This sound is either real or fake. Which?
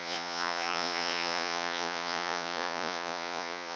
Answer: fake